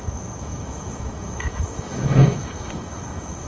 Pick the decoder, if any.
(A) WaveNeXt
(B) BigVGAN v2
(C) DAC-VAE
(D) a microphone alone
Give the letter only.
C